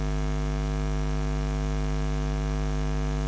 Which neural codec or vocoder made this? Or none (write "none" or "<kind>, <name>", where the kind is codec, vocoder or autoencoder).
none